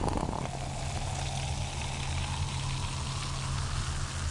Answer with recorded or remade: recorded